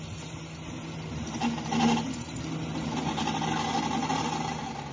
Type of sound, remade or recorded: recorded